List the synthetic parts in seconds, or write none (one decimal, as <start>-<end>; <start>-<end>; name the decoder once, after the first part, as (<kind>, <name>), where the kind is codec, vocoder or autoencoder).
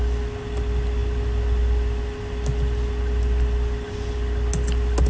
none